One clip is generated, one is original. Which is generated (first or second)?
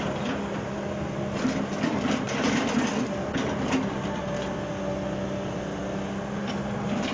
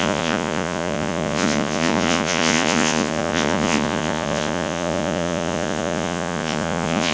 second